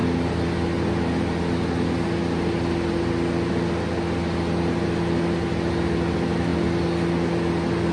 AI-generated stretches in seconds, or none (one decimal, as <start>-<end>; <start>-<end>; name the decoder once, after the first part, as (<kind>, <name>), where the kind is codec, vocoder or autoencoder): none